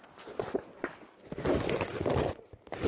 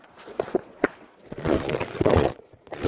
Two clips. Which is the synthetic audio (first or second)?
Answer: second